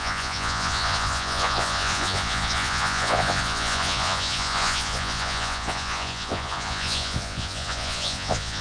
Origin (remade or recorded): remade